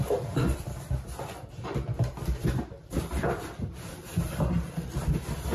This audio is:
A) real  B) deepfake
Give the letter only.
B